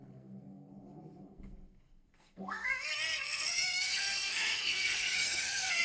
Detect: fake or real fake